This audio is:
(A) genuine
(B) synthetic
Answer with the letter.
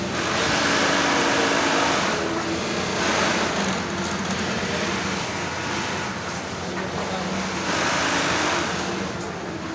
A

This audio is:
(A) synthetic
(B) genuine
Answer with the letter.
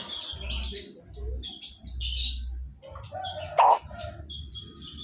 B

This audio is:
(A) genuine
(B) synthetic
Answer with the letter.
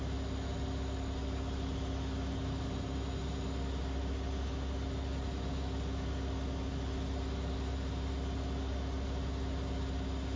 A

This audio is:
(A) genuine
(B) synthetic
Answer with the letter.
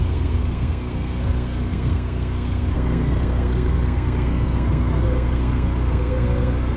B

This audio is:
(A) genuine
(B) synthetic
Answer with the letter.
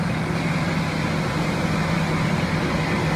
A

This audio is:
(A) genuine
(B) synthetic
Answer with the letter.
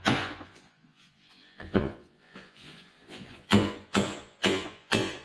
B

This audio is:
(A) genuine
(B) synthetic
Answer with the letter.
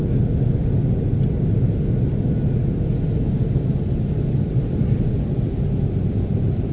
A